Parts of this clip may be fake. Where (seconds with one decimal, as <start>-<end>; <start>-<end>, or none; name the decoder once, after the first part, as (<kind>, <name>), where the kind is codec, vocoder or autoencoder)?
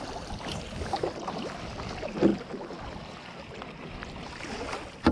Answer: none